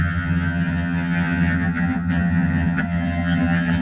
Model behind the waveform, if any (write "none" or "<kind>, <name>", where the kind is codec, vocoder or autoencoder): vocoder, HiFi-GAN